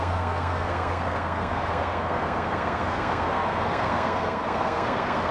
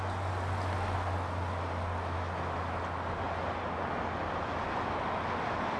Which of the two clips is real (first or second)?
second